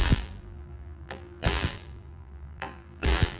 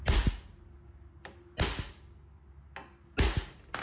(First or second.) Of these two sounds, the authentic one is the second